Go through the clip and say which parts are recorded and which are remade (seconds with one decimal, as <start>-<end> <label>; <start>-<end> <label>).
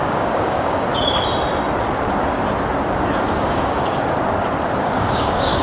0.0-0.9 remade; 0.9-3.4 recorded; 3.4-3.8 remade; 3.8-4.8 recorded; 4.8-5.6 remade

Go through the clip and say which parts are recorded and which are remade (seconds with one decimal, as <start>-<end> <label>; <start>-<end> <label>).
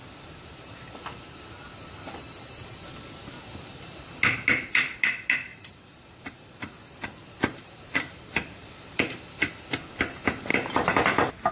0.0-5.5 recorded; 5.5-9.2 remade; 9.2-10.5 recorded; 10.5-11.5 remade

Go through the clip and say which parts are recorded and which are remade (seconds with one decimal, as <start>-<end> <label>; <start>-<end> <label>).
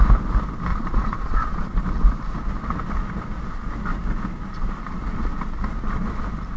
0.0-0.7 recorded; 0.7-1.8 remade; 1.8-6.6 recorded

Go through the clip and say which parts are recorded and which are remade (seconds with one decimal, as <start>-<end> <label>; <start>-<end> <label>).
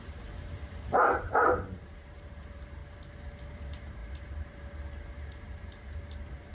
0.0-2.8 remade; 2.8-3.5 recorded; 3.5-6.5 remade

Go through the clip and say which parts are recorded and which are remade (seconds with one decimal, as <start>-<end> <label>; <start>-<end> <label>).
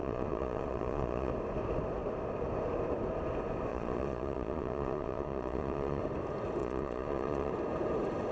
0.0-1.3 remade; 1.3-3.7 recorded; 3.7-6.0 remade; 6.0-6.6 recorded; 6.6-7.5 remade; 7.5-8.3 recorded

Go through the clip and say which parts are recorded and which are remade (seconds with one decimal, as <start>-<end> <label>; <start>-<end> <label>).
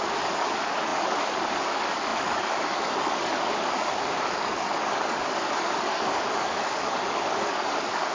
0.0-8.1 remade